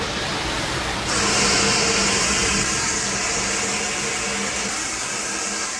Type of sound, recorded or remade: recorded